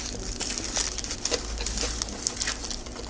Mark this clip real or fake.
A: real